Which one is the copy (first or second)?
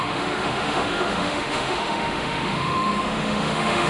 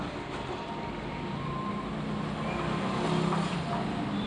first